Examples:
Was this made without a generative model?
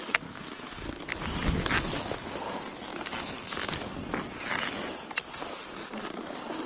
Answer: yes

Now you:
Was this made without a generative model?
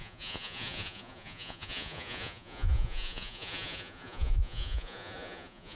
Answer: no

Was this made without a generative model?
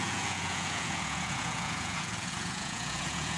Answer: no